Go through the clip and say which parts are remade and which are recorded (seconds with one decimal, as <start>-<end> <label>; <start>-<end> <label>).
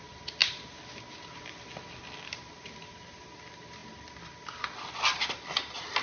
0.0-6.0 recorded